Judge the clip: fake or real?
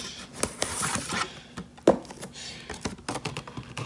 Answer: real